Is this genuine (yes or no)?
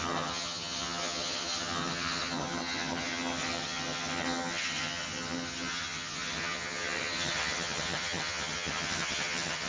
no